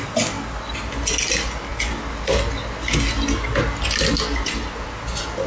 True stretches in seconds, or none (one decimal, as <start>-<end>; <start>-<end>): 0.0-5.5